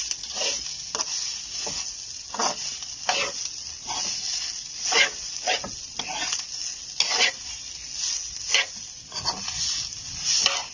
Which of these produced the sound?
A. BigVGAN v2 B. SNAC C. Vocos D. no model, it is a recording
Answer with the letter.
D